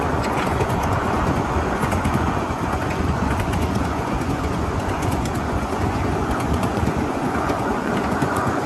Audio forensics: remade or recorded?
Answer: remade